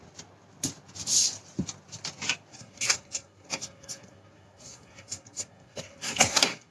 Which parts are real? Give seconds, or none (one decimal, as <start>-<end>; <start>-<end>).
0.0-2.5